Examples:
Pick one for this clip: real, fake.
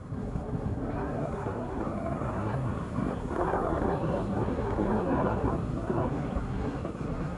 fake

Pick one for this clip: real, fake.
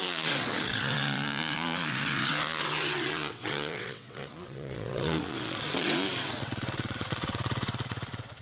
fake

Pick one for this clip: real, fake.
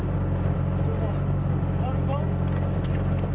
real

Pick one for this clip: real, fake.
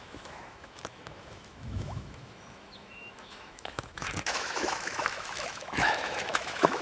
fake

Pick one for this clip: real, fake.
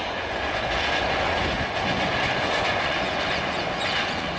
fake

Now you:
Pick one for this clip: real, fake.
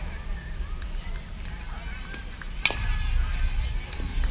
real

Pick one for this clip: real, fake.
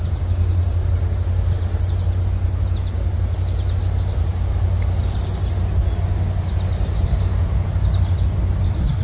real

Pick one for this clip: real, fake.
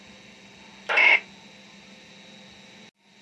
real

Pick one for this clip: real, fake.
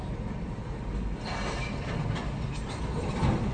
real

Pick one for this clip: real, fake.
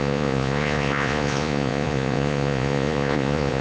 fake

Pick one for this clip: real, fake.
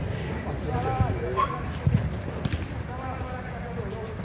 real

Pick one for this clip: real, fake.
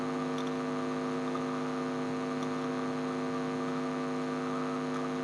real